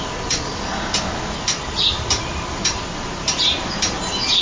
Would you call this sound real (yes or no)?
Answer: yes